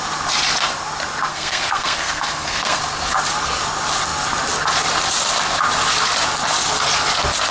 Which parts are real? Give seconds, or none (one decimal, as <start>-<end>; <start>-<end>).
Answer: 0.0-1.3; 2.8-7.5